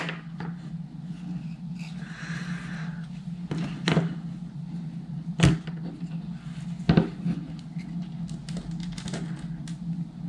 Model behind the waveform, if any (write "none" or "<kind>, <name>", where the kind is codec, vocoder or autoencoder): none